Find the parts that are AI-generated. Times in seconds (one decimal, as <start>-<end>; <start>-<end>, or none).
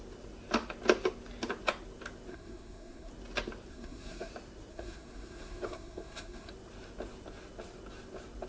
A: 2.3-3.1; 3.7-4.3; 4.7-6.5